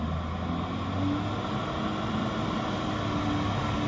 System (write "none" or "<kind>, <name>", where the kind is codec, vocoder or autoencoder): none